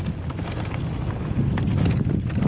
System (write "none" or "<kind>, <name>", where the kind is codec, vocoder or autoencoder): none